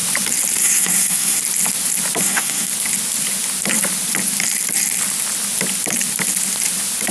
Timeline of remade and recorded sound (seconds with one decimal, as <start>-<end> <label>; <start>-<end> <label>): 0.0-0.6 recorded; 0.6-1.4 remade; 1.4-2.2 recorded; 2.2-2.7 remade; 2.7-7.1 recorded